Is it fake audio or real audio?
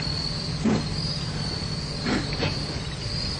real